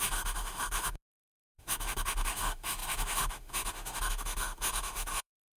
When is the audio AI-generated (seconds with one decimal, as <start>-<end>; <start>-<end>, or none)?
0.0-5.6